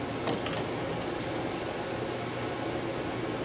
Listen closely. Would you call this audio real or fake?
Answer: real